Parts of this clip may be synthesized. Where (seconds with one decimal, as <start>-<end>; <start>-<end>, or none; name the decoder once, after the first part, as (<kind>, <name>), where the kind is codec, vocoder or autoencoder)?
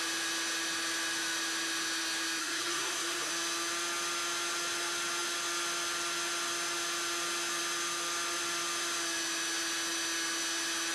2.4-3.3 (codec, SNAC)